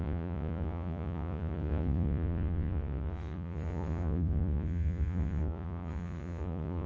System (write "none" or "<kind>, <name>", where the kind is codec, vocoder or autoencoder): vocoder, Vocos